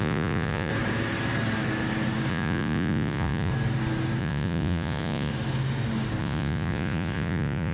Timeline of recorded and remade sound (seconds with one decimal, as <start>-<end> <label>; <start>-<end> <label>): 0.0-0.7 remade; 0.7-2.3 recorded; 2.3-3.5 remade; 3.5-4.2 recorded; 4.2-5.3 remade; 5.3-6.2 recorded; 6.2-7.7 remade